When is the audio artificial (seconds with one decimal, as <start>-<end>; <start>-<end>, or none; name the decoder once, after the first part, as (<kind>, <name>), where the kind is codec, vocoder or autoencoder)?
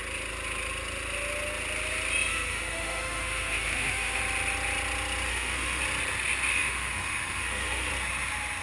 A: 2.3-4.2 (autoencoder, DAC-VAE); 5.3-5.8; 6.5-7.9